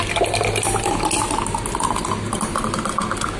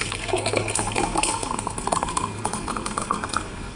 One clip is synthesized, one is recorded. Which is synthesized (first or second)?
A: second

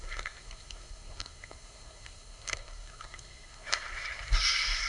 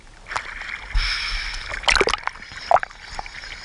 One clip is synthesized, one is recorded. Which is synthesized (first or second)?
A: first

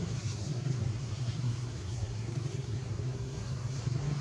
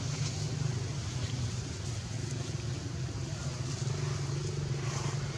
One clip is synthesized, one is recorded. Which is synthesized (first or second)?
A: first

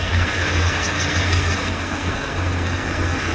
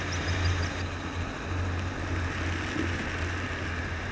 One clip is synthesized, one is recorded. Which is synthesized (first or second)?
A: first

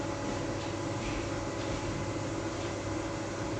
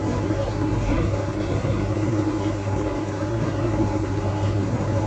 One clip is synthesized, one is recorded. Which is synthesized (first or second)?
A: second